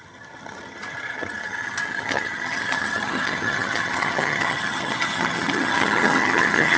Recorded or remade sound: remade